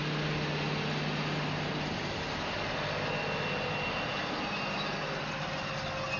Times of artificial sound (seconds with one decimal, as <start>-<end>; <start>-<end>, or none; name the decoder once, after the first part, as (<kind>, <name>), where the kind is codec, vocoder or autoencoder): none